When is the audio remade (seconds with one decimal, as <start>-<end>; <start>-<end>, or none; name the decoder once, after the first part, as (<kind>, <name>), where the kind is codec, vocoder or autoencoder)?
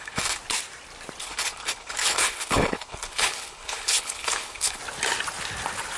0.0-0.4 (codec, HILCodec); 1.2-4.8